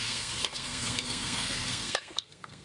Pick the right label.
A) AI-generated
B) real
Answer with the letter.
A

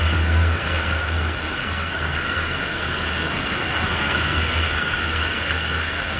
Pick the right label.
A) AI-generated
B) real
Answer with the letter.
A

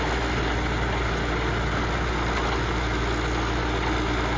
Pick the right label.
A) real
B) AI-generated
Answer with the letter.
A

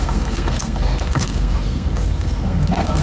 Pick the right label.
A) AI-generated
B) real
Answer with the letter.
A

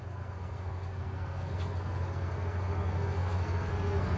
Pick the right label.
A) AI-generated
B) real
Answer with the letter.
A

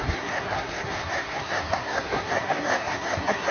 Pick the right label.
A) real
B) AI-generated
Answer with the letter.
B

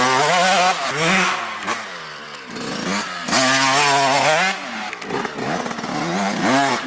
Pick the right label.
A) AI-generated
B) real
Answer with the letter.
B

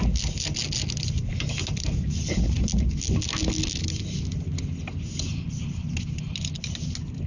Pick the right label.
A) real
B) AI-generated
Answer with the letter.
A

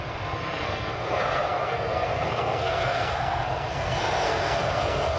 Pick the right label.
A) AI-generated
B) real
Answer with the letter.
A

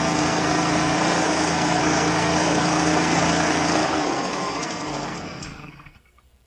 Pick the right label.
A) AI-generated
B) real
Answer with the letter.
A